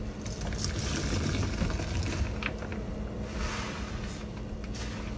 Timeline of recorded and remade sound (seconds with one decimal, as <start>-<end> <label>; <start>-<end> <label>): 0.0-5.2 recorded